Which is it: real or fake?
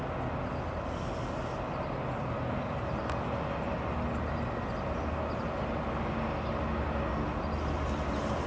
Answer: real